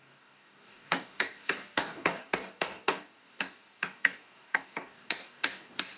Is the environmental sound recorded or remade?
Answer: remade